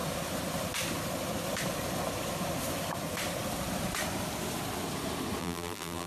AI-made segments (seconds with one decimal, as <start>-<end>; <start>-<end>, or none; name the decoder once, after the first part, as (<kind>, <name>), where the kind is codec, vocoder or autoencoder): 5.4-6.1 (vocoder, BigVGAN v2)